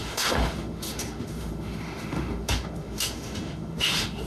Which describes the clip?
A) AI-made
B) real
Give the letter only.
A